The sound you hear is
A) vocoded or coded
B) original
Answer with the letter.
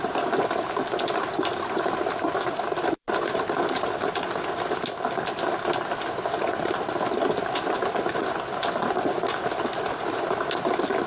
B